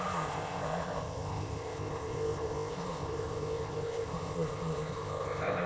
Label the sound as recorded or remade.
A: remade